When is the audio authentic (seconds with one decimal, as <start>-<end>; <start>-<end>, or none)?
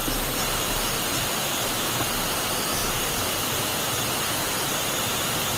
0.0-1.1; 1.7-2.8; 3.7-5.6